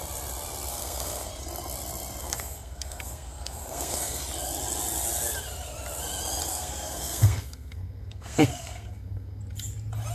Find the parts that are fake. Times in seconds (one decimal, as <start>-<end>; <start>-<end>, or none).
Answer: 0.7-1.3; 2.2-4.2; 6.5-9.4